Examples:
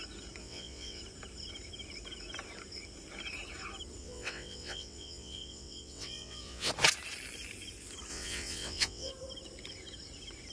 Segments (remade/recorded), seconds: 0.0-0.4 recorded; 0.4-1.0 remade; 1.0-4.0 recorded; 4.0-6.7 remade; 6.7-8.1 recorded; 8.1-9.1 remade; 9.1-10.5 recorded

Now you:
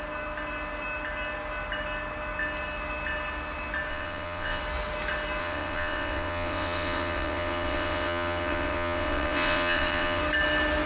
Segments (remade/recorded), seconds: 0.0-3.9 recorded; 3.9-4.6 remade; 4.6-5.4 recorded; 5.4-10.2 remade; 10.2-10.9 recorded

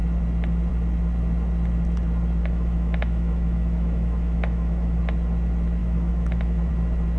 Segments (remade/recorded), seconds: 0.0-2.4 recorded; 2.4-5.0 remade; 5.0-5.8 recorded; 5.8-6.7 remade; 6.7-7.2 recorded